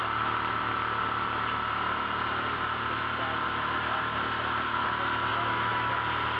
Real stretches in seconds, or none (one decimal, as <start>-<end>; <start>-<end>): 0.0-5.3; 5.9-6.4